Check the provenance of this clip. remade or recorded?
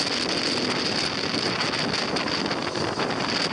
recorded